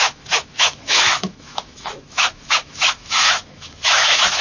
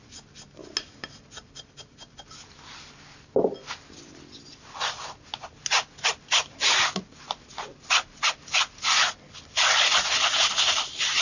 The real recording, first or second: second